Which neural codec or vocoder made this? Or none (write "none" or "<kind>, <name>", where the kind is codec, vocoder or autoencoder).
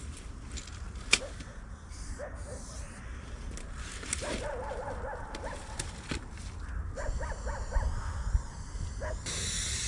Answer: none